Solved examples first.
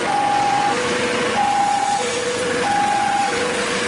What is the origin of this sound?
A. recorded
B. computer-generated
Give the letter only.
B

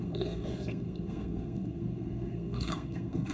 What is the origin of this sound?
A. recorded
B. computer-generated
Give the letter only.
B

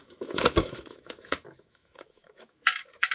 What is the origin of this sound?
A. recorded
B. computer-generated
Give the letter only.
B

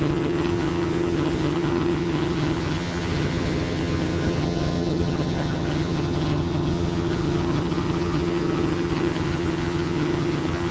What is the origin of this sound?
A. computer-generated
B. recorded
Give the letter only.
A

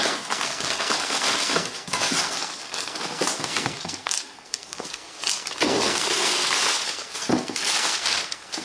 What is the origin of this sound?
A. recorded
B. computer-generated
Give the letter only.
B